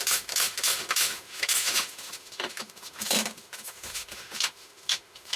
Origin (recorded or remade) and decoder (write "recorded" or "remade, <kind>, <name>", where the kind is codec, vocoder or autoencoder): remade, autoencoder, DAC-VAE